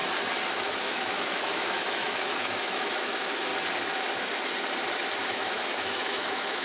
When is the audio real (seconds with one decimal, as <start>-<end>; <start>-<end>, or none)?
0.0-0.5; 3.5-5.2